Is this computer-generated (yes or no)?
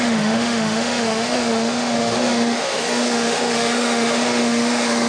yes